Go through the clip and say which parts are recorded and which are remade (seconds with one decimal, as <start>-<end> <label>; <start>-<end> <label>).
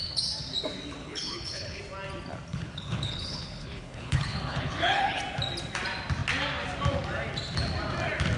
0.0-1.0 recorded; 1.0-1.8 remade; 1.8-2.5 recorded; 2.5-5.2 remade; 5.2-8.4 recorded